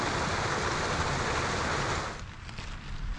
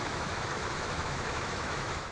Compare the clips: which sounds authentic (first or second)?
first